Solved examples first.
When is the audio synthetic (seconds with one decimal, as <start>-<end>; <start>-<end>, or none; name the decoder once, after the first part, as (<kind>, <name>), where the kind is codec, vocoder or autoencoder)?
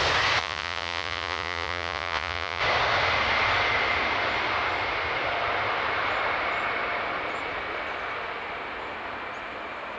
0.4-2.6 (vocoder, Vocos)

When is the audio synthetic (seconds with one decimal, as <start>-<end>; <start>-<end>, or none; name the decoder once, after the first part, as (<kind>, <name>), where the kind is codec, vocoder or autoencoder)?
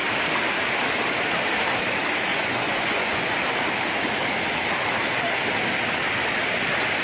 2.3-3.4 (vocoder, Vocos)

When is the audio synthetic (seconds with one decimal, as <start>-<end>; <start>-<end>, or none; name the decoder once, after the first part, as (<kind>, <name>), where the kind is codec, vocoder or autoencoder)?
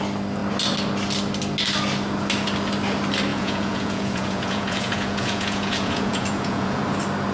3.3-6.8 (vocoder, Vocos)